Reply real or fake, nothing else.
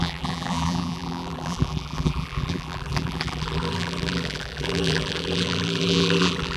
fake